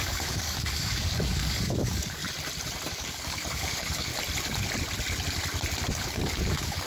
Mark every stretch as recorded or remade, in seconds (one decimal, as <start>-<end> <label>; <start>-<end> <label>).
0.0-2.2 remade; 2.2-2.9 recorded; 2.9-4.1 remade; 4.1-5.9 recorded; 5.9-6.9 remade